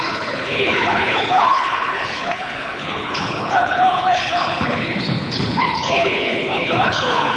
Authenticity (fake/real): fake